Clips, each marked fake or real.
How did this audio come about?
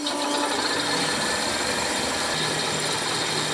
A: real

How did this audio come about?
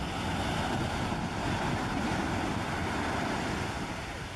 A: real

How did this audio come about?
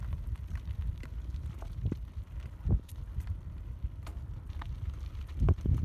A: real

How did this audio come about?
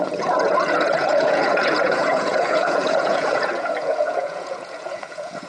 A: fake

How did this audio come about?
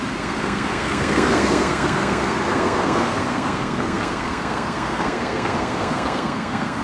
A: fake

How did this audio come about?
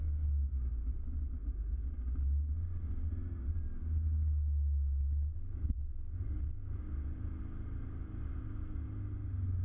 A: real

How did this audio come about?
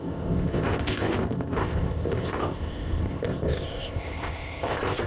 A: fake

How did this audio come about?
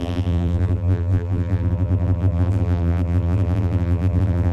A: fake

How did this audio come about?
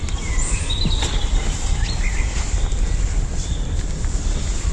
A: real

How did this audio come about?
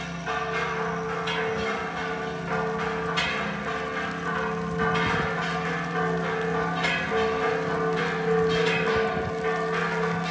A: real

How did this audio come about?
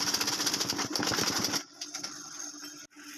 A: real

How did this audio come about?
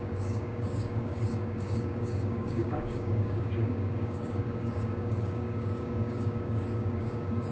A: fake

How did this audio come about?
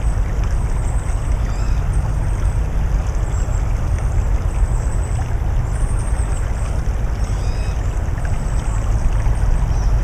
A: real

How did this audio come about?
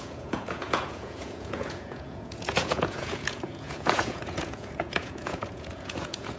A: fake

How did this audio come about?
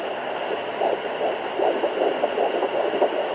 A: real